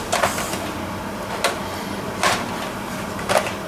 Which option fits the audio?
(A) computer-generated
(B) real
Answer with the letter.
B